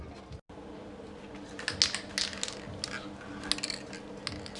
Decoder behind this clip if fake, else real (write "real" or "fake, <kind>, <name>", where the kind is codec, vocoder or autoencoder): real